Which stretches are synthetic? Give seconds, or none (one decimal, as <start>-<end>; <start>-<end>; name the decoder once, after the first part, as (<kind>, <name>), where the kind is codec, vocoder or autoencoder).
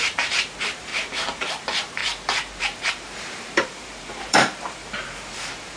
0.0-0.9 (vocoder, BigVGAN v2); 1.6-2.0; 2.6-5.8